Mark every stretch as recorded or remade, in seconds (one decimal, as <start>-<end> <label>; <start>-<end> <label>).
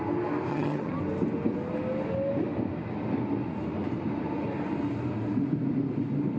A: 0.0-0.5 recorded; 0.5-1.0 remade; 1.0-6.4 recorded